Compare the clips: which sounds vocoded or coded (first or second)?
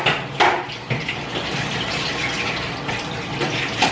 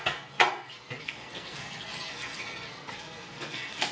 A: second